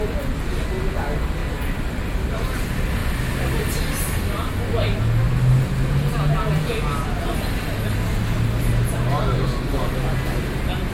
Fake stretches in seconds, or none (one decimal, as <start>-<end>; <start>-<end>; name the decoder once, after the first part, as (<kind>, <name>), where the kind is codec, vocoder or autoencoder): 5.8-6.9 (vocoder, Vocos)